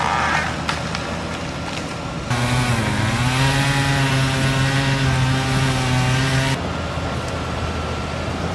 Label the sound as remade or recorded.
recorded